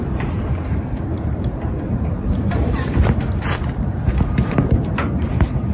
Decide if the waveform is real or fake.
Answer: fake